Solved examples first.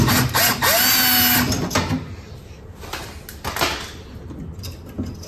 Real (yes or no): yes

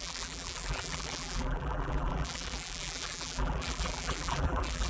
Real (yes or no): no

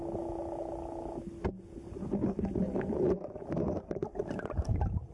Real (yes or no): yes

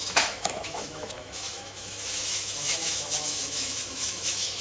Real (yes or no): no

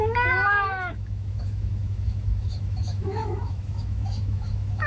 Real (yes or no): no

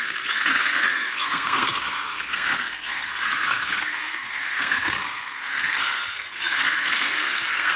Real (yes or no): no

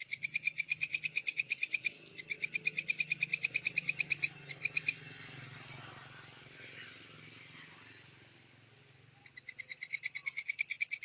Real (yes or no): yes